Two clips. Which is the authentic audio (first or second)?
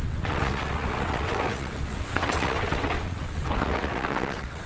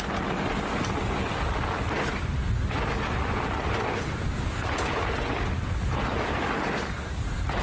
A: second